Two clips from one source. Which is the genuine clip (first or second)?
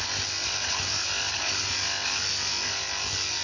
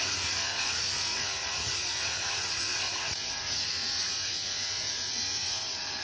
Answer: first